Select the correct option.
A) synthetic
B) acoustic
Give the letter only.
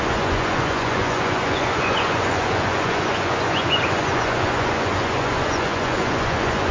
A